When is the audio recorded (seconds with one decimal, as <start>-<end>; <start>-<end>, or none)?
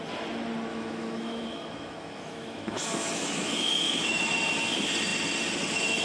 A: 0.0-0.7; 4.3-6.0